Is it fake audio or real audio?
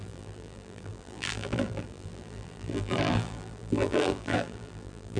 fake